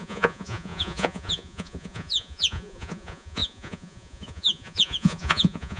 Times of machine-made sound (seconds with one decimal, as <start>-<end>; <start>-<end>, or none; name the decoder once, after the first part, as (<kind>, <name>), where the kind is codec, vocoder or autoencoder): 0.0-5.8 (vocoder, Vocos)